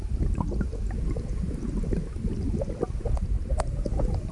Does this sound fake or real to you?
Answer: real